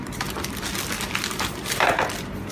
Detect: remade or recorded recorded